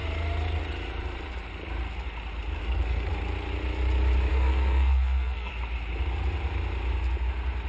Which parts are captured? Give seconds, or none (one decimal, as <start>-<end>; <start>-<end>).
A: 0.0-2.6; 3.1-4.3; 5.5-7.7